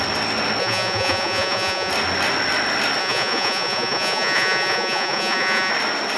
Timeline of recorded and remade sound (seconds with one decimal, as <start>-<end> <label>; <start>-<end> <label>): 0.0-0.6 recorded; 0.6-1.9 remade; 1.9-3.0 recorded; 3.0-5.7 remade; 5.7-6.2 recorded